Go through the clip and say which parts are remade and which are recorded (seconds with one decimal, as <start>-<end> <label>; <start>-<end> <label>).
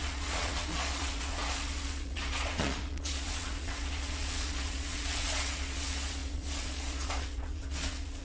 0.0-8.2 remade